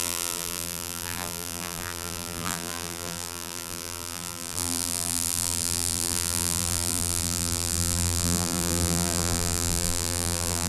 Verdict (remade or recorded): remade